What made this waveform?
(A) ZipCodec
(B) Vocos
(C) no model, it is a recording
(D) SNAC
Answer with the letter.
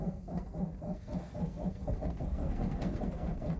D